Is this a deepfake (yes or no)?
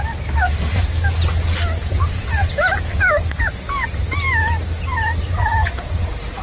no